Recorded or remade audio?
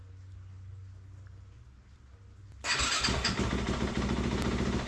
recorded